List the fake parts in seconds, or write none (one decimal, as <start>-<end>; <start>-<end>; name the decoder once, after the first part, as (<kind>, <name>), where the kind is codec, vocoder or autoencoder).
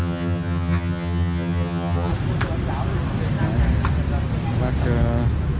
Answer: 0.0-2.1 (vocoder, HiFi-GAN)